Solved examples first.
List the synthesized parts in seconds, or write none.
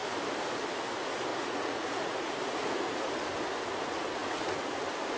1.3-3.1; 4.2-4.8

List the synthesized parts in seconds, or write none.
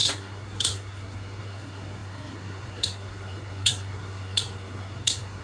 0.0-5.4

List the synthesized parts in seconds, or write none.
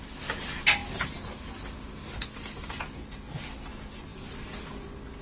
none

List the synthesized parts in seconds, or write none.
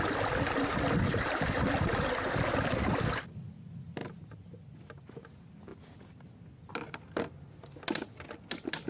none